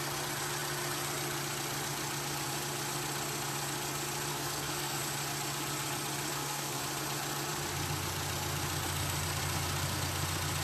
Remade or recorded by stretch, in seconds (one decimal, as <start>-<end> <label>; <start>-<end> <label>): 0.0-4.3 recorded; 4.3-5.0 remade; 5.0-6.3 recorded; 6.3-6.8 remade; 6.8-10.6 recorded